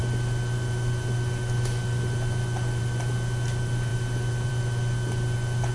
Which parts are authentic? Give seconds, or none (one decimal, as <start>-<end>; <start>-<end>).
0.0-5.7